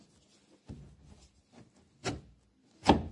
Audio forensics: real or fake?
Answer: real